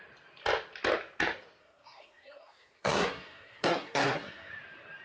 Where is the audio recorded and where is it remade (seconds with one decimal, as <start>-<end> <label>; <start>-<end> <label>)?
0.0-1.6 recorded; 1.6-4.5 remade; 4.5-5.0 recorded